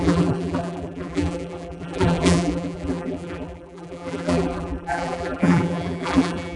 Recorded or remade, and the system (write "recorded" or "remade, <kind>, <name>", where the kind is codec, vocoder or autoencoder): remade, vocoder, BigVGAN v2